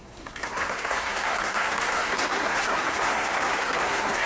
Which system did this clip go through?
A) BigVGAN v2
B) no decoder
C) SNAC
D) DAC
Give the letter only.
C